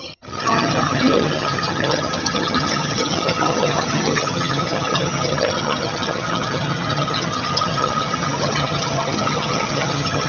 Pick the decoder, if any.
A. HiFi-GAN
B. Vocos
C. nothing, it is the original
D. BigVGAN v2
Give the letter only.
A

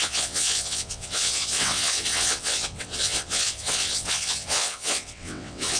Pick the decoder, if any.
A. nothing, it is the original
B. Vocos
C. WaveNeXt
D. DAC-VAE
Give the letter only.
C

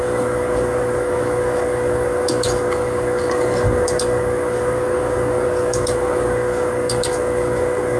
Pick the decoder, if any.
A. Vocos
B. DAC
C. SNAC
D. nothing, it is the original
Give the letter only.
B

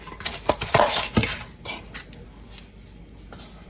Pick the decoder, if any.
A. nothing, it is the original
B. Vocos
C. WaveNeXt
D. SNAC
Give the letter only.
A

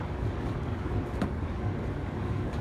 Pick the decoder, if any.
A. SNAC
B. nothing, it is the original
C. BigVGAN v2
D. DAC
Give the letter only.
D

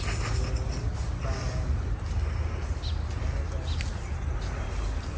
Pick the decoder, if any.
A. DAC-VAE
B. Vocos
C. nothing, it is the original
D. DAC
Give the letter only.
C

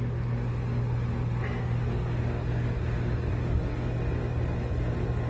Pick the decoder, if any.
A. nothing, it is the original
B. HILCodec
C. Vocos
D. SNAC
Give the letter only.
A